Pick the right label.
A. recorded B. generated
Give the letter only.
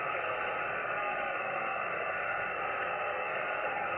B